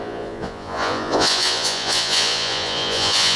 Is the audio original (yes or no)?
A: no